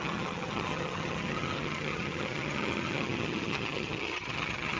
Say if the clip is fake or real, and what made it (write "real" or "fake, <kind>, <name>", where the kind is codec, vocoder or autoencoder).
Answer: fake, vocoder, HiFi-GAN